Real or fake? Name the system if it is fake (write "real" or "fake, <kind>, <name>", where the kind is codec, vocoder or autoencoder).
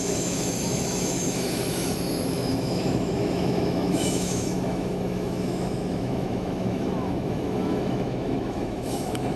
fake, autoencoder, DAC-VAE